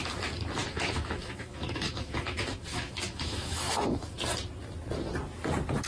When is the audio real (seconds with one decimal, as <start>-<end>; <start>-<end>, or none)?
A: 0.0-0.6; 4.1-5.9